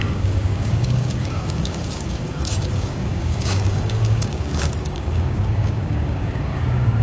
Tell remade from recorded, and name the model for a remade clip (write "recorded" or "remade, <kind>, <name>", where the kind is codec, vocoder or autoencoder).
remade, codec, DAC